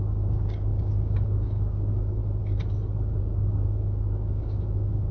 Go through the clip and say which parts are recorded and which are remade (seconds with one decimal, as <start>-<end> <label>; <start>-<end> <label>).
0.0-2.2 remade; 2.2-3.2 recorded; 3.2-5.1 remade